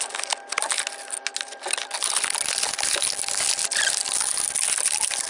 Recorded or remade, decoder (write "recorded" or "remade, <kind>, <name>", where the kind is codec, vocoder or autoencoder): recorded